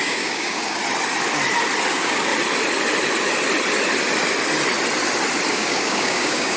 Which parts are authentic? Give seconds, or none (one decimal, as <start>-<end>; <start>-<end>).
0.8-1.9; 2.3-5.5